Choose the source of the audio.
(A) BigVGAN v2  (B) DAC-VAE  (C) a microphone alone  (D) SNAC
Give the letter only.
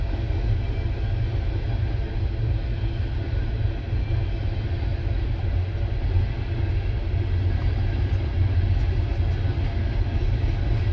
C